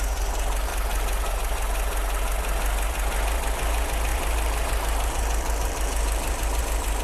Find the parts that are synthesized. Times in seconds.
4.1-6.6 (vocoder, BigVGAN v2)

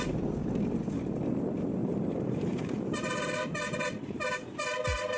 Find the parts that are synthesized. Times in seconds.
1.8-3.5 (vocoder, BigVGAN v2)

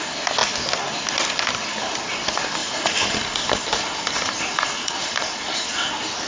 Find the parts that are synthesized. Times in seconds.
2.6-5.7 (vocoder, BigVGAN v2)

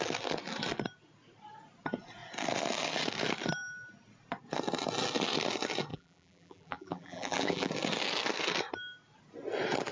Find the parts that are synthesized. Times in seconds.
5.9-7.7 (vocoder, BigVGAN v2)

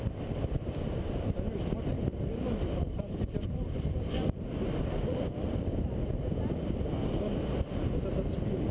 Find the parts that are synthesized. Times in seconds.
0.0-7.8 (vocoder, BigVGAN v2)

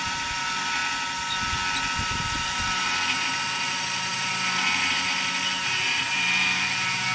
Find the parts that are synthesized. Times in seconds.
0.0-0.8 (vocoder, BigVGAN v2); 2.0-7.1